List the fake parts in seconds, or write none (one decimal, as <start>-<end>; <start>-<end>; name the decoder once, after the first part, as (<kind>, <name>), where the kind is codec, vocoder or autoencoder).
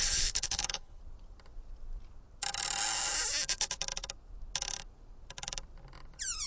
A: 0.0-1.0 (codec, HILCodec)